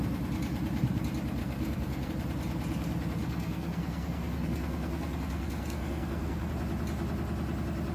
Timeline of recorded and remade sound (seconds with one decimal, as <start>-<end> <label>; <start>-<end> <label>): 0.0-1.4 recorded; 1.4-2.1 remade; 2.1-3.2 recorded; 3.2-6.5 remade; 6.5-7.9 recorded